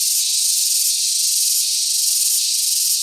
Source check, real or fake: real